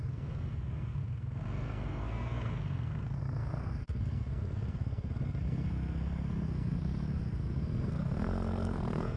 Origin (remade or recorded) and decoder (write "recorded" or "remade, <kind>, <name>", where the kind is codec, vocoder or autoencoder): remade, codec, SNAC